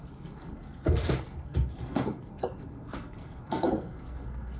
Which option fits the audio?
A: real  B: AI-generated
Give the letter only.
B